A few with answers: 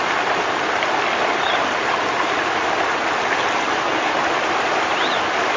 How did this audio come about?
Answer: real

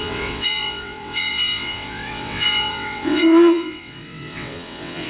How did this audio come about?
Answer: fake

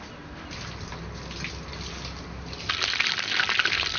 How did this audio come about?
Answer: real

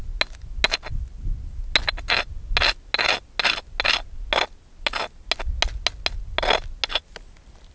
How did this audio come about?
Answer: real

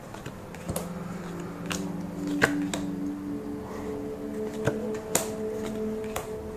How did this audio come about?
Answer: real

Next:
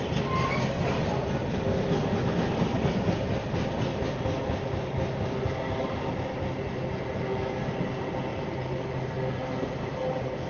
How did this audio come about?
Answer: real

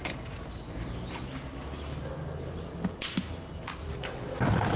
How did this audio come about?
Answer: real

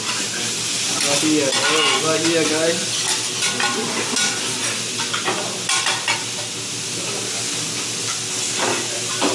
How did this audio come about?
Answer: real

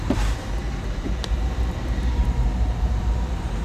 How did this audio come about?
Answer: fake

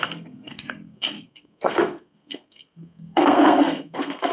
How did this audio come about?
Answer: fake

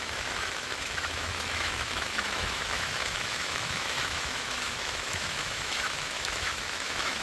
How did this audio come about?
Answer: fake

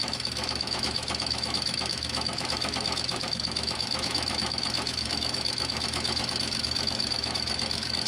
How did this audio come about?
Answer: fake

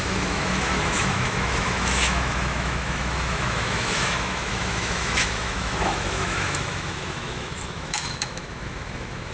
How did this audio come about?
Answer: fake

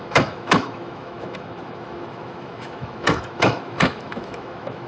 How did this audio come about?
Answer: fake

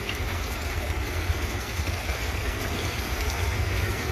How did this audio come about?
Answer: fake